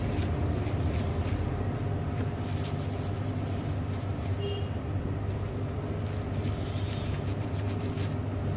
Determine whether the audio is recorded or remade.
recorded